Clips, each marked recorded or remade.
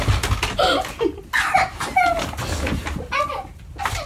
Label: recorded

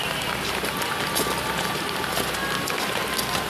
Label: recorded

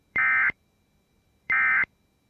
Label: remade